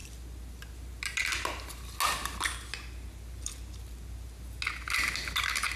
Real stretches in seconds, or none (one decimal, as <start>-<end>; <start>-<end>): 0.0-5.8